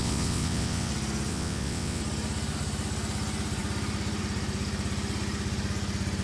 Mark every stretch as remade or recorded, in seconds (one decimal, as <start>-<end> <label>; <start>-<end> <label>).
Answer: 0.0-0.9 remade; 0.9-1.3 recorded; 1.3-2.0 remade; 2.0-6.2 recorded